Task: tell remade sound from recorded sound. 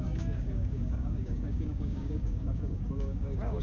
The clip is remade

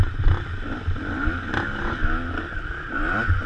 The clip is recorded